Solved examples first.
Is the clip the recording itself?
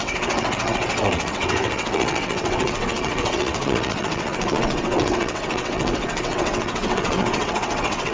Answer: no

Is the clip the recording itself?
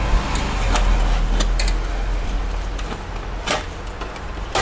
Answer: yes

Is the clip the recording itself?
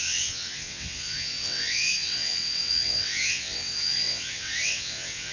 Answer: no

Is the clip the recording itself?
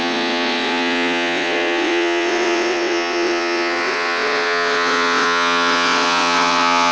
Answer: no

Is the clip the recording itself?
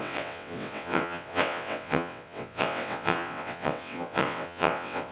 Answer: no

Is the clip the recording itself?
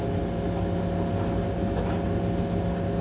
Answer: yes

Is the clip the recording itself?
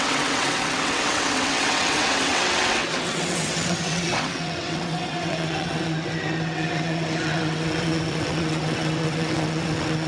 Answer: no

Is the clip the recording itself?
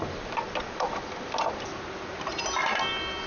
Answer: yes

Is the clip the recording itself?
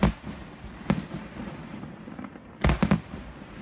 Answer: yes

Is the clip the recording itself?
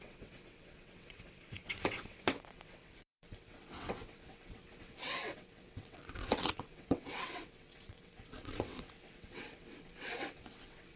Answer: no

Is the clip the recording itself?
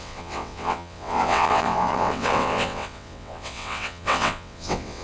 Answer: no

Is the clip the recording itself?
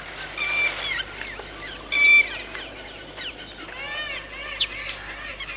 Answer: yes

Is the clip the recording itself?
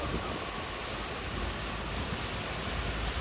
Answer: yes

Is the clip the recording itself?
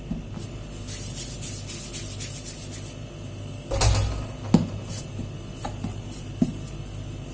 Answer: yes